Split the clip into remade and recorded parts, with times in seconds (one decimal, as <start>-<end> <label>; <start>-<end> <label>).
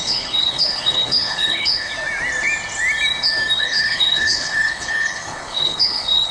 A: 0.0-1.9 remade; 1.9-3.6 recorded; 3.6-6.3 remade